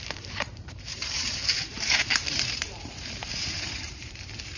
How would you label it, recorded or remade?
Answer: remade